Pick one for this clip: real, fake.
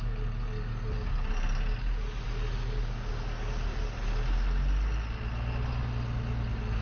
real